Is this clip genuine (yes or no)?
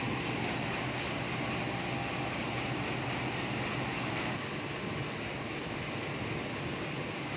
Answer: yes